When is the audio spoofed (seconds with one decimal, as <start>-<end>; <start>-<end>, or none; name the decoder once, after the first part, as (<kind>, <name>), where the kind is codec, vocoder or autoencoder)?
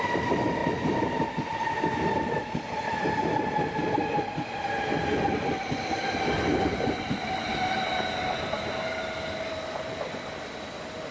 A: none